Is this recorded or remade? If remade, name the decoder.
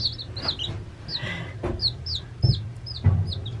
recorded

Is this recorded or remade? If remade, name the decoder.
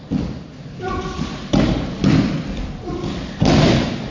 recorded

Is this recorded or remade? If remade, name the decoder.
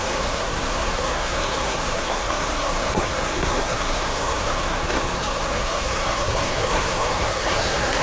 remade, codec, SNAC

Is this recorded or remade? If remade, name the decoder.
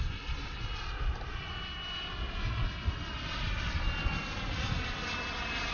recorded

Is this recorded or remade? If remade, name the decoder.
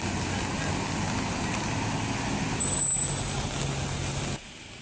recorded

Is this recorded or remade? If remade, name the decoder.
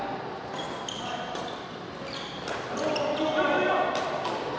recorded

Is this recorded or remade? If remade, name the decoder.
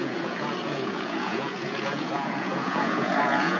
remade, vocoder, Vocos